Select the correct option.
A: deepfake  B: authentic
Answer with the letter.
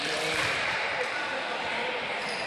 A